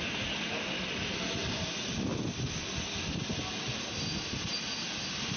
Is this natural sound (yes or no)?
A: yes